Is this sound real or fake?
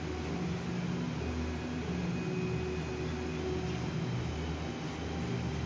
real